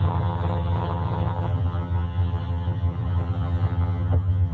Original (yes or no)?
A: no